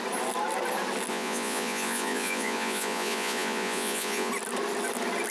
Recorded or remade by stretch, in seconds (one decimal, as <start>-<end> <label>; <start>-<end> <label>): 0.0-1.1 recorded; 1.1-4.3 remade; 4.3-5.3 recorded